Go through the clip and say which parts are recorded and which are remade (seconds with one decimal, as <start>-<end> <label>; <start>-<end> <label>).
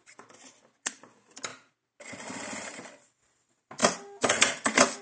0.0-5.0 recorded